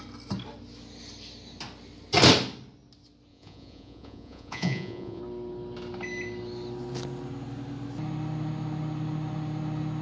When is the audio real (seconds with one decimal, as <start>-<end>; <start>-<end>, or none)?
0.0-3.3; 5.2-10.0